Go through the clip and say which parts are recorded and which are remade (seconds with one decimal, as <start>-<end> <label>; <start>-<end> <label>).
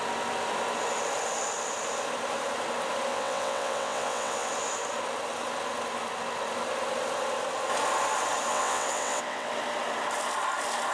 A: 0.0-3.1 recorded; 3.1-4.5 remade; 4.5-8.5 recorded; 8.5-9.5 remade; 9.5-10.9 recorded